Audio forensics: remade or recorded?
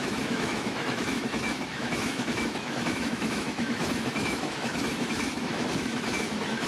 remade